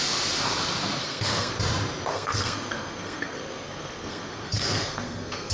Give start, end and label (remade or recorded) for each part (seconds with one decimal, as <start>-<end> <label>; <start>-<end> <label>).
0.0-1.0 recorded; 1.0-1.5 remade; 1.5-2.1 recorded; 2.1-5.5 remade